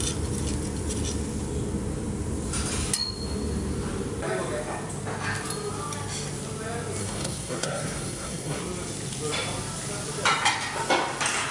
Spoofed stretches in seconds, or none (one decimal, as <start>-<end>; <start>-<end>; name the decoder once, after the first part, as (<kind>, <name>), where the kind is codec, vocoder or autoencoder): 7.0-8.6 (codec, SNAC)